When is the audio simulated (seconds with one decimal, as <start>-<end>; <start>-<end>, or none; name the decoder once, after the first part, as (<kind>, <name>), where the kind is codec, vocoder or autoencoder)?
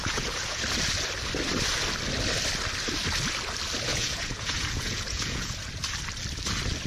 0.0-0.6 (vocoder, Vocos); 3.9-5.7